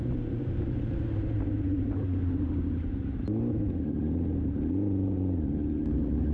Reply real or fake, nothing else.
fake